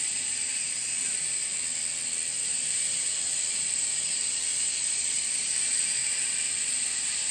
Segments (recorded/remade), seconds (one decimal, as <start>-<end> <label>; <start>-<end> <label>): 0.0-1.5 remade; 1.5-2.3 recorded; 2.3-7.3 remade